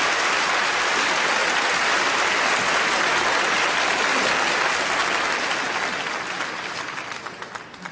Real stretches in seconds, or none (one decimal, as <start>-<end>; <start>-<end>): 0.0-7.9